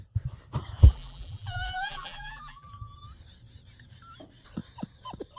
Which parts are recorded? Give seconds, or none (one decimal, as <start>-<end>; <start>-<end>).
0.0-0.8; 2.7-5.4